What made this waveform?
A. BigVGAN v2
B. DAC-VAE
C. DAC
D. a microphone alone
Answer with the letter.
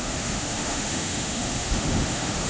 B